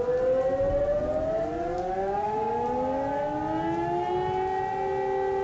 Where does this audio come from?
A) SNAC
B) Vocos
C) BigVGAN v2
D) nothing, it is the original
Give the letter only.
D